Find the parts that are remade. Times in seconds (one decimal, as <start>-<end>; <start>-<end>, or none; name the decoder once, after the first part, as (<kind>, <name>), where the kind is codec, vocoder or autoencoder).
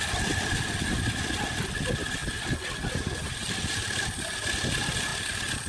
none